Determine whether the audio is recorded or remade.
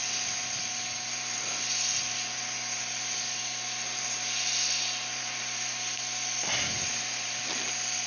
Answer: recorded